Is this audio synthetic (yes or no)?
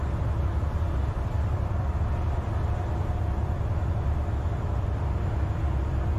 no